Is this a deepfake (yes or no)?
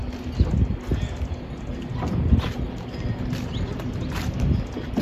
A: no